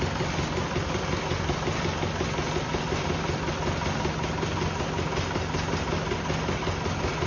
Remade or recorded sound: recorded